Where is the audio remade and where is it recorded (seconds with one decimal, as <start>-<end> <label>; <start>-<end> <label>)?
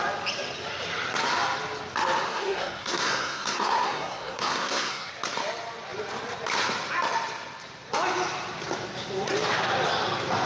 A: 0.0-2.3 recorded; 2.3-5.1 remade; 5.1-10.5 recorded